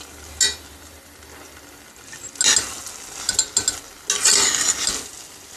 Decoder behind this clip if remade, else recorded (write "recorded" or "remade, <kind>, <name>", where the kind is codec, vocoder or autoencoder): recorded